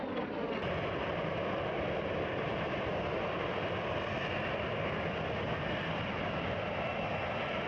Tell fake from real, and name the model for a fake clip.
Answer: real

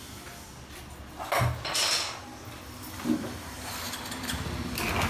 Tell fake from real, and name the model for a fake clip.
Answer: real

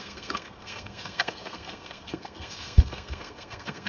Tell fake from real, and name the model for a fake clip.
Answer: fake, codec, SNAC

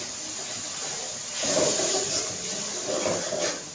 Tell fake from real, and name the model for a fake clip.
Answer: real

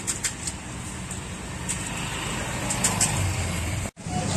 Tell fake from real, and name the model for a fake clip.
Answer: real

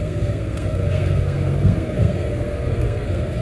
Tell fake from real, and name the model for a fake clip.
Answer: fake, codec, SNAC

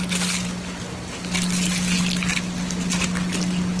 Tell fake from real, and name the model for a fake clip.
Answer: real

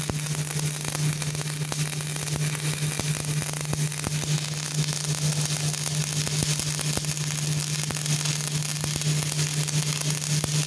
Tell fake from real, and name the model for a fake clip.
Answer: real